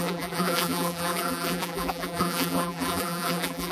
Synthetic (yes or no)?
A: yes